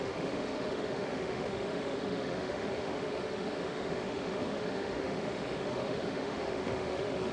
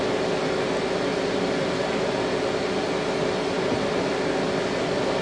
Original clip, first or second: second